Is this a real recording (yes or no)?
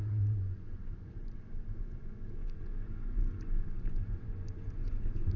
no